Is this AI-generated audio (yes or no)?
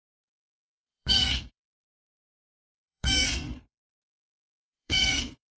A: yes